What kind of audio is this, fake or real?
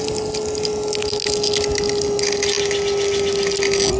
real